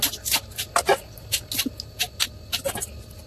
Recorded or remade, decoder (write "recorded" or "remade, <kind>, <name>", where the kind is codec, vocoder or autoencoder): recorded